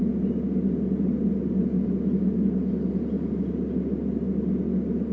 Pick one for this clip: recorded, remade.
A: recorded